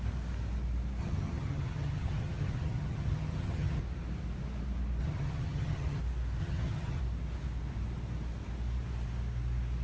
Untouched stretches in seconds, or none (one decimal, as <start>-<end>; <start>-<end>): 0.0-1.0; 3.8-5.0; 6.0-6.4; 7.0-9.8